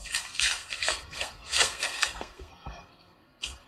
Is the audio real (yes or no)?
no